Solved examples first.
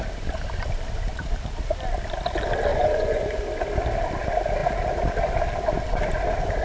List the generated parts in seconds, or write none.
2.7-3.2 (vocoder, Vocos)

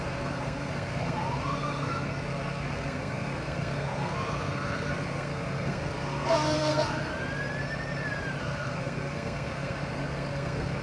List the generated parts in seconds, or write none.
0.0-7.1 (codec, SNAC); 8.4-10.8

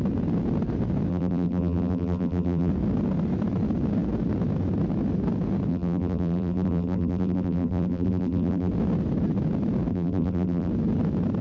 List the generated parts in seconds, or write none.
1.1-2.7 (vocoder, BigVGAN v2); 5.7-8.7; 9.9-10.7

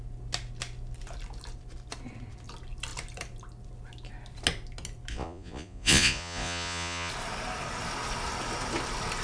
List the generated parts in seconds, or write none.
5.1-7.1 (vocoder, Vocos)